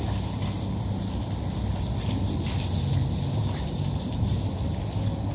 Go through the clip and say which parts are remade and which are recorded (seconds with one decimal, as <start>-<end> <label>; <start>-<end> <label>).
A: 0.0-3.0 recorded; 3.0-4.8 remade; 4.8-5.3 recorded